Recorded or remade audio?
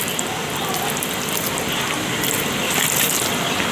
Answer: recorded